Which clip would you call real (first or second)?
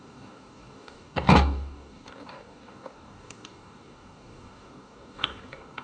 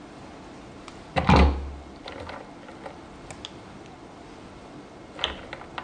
second